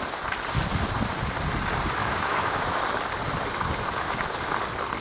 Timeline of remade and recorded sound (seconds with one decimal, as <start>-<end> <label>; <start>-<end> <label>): 0.0-2.0 recorded; 2.0-2.8 remade; 2.8-5.0 recorded